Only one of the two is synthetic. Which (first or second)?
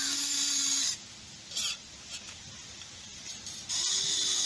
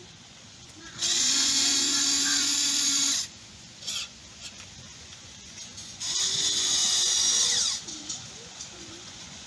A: second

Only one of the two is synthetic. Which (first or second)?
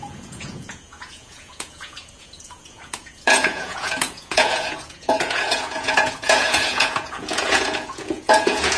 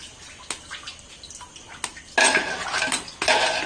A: first